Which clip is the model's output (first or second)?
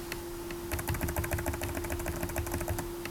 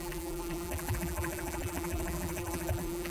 second